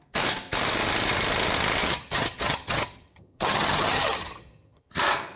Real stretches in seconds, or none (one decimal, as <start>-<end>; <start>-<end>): 0.0-1.8; 4.9-5.4